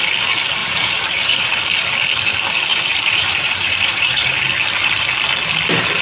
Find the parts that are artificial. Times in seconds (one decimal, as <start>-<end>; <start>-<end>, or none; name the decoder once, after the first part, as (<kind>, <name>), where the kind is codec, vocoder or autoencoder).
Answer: 0.6-1.6 (vocoder, BigVGAN v2); 2.7-4.3